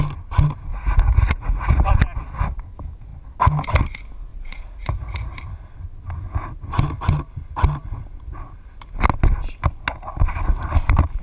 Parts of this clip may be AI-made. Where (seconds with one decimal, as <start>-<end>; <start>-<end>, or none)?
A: 0.7-1.9; 4.3-5.3